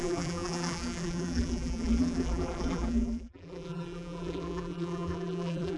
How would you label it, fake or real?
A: fake